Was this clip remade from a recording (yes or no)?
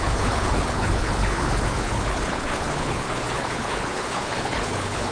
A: yes